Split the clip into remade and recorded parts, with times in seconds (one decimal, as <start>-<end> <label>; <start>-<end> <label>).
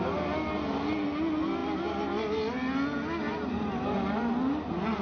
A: 0.0-5.0 recorded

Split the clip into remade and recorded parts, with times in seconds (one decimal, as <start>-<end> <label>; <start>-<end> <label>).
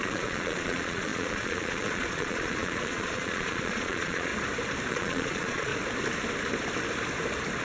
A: 0.0-4.3 remade; 4.3-4.9 recorded; 4.9-5.7 remade; 5.7-7.6 recorded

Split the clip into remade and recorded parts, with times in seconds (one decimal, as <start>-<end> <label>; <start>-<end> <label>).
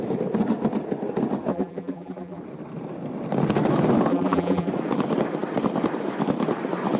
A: 0.0-1.5 recorded; 1.5-2.4 remade; 2.4-4.1 recorded; 4.1-4.7 remade; 4.7-7.0 recorded